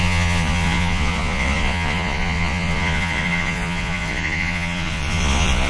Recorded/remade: remade